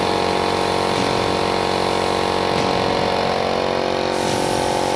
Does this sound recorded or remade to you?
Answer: recorded